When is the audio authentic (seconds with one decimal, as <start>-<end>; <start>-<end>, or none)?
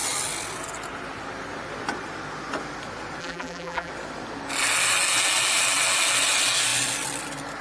0.0-3.2; 3.9-7.6